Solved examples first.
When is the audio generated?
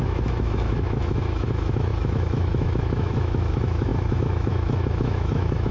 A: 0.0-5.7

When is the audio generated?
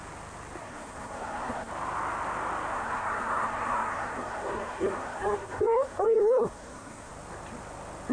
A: 0.6-1.7; 2.7-7.1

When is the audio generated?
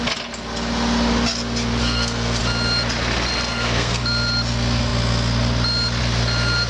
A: 1.8-2.4; 3.5-4.0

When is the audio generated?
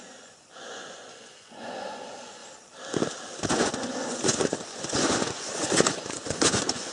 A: 0.0-2.4; 3.5-6.9